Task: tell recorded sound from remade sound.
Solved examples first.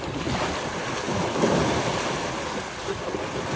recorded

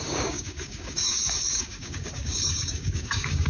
remade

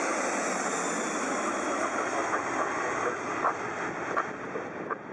recorded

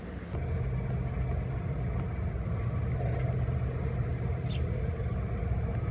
recorded